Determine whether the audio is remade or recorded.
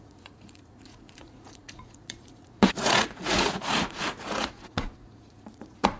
remade